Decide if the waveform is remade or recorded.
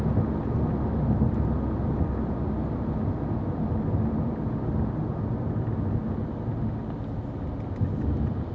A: recorded